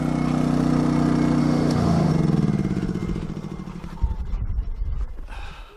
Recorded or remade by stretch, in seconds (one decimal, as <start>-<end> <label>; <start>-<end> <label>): 0.0-1.4 recorded; 1.4-2.1 remade; 2.1-5.8 recorded